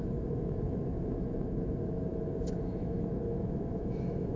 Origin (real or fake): fake